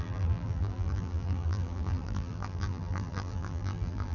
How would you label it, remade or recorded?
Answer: remade